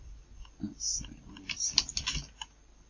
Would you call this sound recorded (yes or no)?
yes